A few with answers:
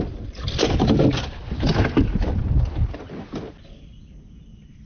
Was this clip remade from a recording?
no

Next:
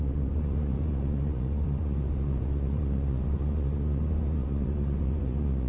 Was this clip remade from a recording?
yes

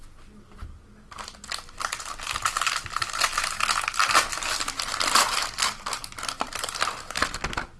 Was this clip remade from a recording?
no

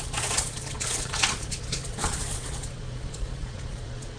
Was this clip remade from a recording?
yes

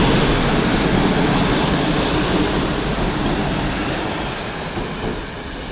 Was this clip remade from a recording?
no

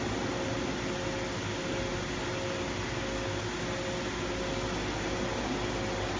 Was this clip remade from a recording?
no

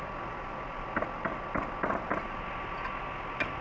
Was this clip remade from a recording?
no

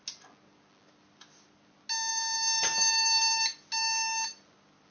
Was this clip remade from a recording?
no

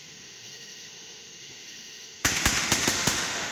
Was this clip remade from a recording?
yes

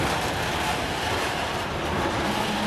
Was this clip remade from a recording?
yes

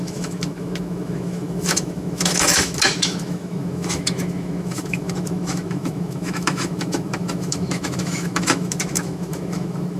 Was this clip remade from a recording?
yes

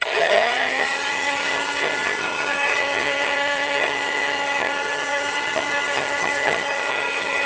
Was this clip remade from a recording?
yes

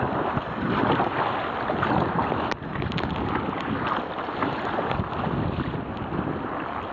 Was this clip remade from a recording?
no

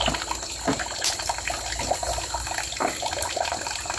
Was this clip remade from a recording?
no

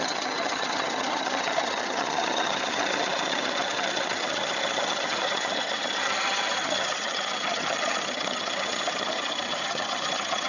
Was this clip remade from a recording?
yes